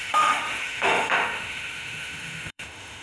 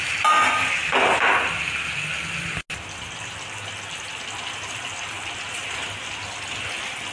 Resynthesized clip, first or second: first